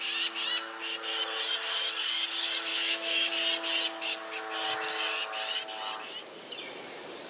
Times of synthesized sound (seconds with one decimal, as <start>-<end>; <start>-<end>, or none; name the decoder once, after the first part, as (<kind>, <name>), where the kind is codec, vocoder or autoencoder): 2.7-3.3 (autoencoder, DAC-VAE)